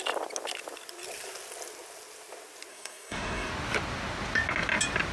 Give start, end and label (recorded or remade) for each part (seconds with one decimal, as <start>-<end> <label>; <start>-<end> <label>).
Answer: 0.0-2.7 recorded; 2.7-3.5 remade; 3.5-5.1 recorded